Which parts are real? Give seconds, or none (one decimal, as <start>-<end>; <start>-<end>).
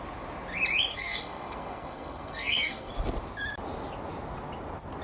0.0-0.9; 2.9-5.0